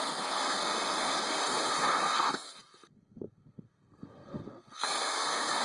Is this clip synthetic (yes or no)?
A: yes